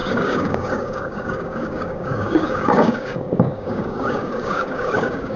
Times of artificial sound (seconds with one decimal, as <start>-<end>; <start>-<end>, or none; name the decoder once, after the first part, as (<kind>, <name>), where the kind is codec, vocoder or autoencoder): 0.0-5.4 (codec, DAC)